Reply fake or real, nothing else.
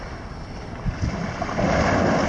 real